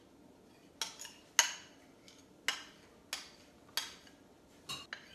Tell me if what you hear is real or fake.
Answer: real